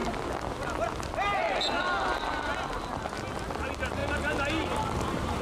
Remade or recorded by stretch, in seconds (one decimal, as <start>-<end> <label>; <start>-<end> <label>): 0.0-4.0 recorded; 4.0-4.8 remade; 4.8-5.4 recorded